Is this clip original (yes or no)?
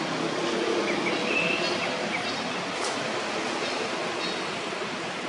yes